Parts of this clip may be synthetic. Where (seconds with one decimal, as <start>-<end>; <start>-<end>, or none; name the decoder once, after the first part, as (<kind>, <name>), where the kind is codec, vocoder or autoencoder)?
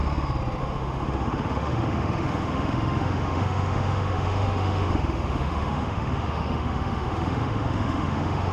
0.6-8.5 (autoencoder, DAC-VAE)